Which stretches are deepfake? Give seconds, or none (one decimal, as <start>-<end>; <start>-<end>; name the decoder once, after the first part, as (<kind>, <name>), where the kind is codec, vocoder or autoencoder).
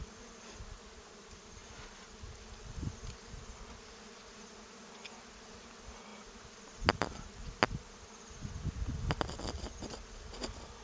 none